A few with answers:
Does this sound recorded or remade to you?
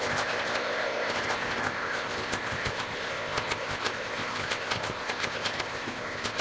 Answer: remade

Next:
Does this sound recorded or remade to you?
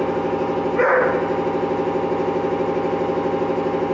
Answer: recorded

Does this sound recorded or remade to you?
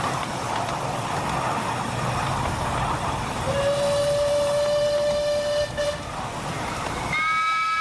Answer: recorded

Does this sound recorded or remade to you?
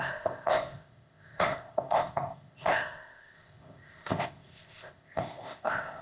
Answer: remade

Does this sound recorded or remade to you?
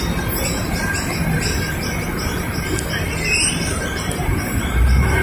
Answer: recorded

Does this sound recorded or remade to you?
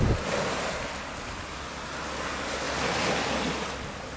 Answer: recorded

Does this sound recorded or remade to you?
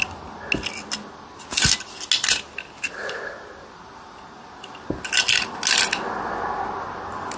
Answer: recorded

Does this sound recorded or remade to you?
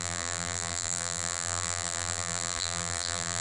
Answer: remade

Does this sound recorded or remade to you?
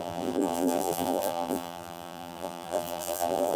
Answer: remade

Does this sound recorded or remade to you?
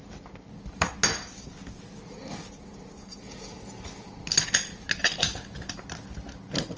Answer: recorded